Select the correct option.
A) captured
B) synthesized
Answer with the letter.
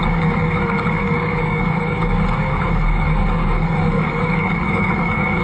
B